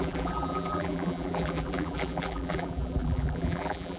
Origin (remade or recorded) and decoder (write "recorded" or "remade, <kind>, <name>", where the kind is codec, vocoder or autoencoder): remade, vocoder, BigVGAN v2